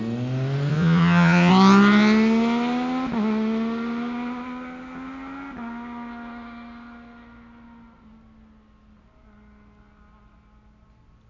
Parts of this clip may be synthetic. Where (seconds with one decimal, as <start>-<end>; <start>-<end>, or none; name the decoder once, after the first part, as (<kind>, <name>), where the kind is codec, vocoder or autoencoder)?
0.7-1.5 (vocoder, Vocos)